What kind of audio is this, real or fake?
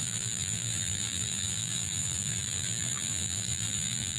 fake